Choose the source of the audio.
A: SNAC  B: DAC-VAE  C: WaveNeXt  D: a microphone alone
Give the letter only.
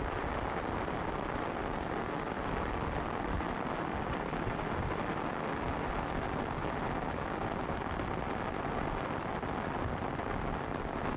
D